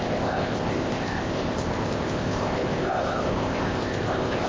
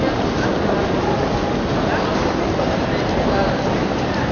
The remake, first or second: first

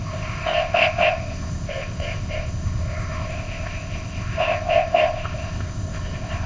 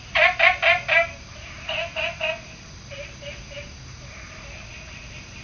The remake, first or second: first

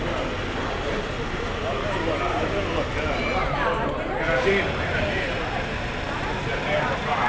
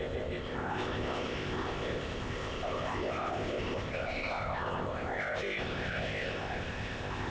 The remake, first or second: second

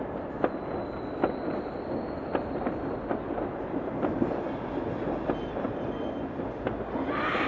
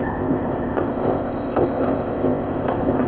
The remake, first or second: second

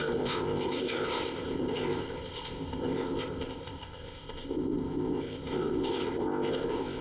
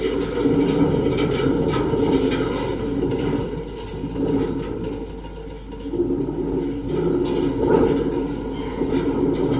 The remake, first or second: first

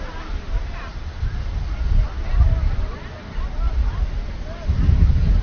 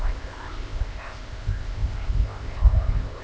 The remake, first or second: second